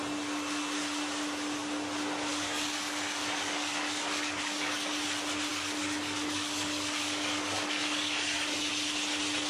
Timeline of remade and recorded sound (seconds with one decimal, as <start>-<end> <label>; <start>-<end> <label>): 0.0-2.3 recorded; 2.3-4.9 remade; 4.9-5.5 recorded; 5.5-8.7 remade; 8.7-9.5 recorded